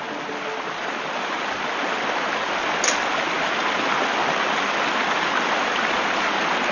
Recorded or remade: recorded